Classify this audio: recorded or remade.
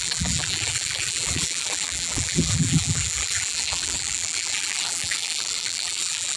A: remade